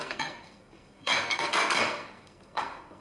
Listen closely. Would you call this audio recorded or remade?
remade